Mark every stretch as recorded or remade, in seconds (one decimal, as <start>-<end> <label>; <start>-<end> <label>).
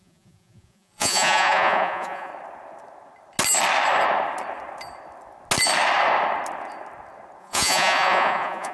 0.0-2.3 remade; 2.3-7.4 recorded; 7.4-8.7 remade